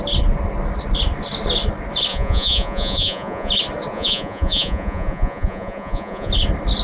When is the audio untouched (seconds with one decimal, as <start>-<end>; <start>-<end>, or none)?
0.0-2.1; 3.5-3.9; 6.3-6.8